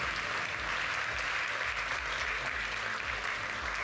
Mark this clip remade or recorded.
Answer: recorded